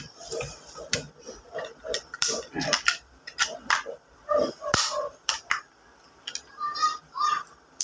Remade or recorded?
remade